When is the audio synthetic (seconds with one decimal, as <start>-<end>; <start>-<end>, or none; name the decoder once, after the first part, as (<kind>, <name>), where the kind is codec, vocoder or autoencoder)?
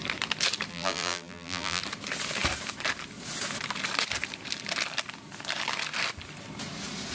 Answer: 0.7-1.8 (vocoder, BigVGAN v2)